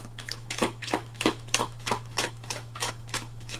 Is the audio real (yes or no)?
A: no